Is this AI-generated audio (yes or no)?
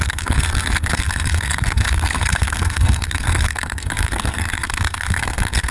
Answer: yes